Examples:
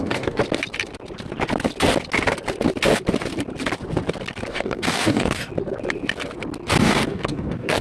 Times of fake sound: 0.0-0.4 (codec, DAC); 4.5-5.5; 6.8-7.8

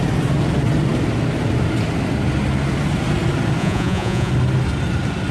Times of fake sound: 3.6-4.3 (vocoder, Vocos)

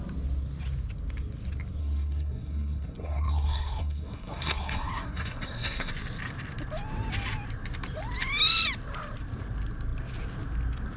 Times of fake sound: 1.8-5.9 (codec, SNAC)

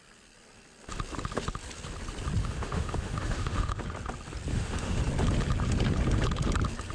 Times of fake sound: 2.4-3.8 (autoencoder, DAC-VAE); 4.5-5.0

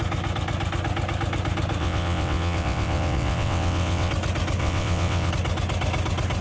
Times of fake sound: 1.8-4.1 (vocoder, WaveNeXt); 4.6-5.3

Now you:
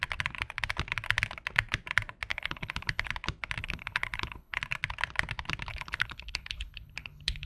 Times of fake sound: 2.3-3.1 (codec, HILCodec); 3.6-4.6; 5.7-7.5

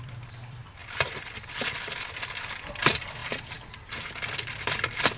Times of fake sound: 0.0-0.8 (vocoder, BigVGAN v2); 1.3-5.2

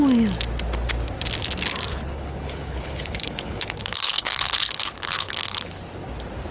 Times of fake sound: 1.9-5.8 (codec, HILCodec)